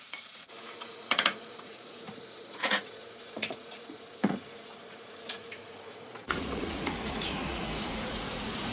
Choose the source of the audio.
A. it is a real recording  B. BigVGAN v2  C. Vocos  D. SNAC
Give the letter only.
C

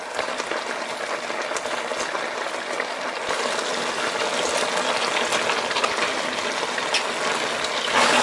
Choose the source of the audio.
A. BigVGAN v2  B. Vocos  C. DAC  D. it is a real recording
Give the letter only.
D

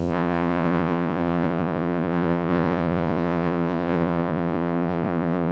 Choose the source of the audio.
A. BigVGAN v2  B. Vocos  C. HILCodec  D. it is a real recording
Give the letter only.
B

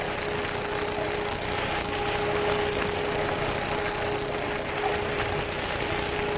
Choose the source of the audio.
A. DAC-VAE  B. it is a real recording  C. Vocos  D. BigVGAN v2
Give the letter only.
B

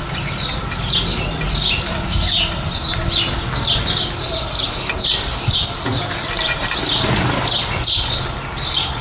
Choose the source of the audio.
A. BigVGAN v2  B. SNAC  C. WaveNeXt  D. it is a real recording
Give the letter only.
D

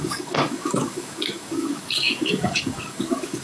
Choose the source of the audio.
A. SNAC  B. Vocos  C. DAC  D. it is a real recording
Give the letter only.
C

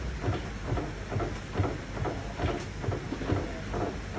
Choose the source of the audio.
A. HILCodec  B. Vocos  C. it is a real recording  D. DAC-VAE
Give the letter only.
C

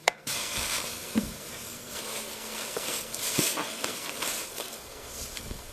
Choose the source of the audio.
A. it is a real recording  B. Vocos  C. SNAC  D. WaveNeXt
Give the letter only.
C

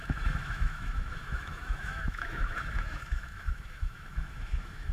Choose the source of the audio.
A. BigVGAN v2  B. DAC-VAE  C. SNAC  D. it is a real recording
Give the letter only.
B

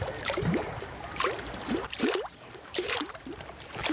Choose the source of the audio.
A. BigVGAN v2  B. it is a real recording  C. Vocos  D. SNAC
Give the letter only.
A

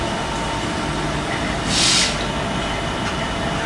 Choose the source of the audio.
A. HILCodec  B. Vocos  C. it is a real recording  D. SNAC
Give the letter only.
C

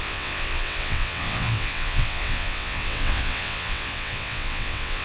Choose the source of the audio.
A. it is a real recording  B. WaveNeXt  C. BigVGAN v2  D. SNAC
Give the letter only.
B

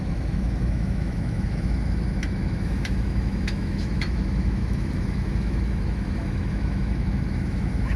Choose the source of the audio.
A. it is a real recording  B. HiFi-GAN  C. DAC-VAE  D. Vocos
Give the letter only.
C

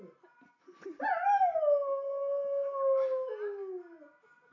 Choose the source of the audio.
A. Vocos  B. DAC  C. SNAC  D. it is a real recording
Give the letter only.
D